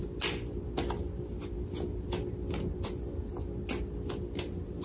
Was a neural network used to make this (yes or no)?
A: no